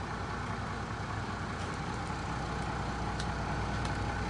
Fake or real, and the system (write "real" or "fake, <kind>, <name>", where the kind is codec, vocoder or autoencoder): real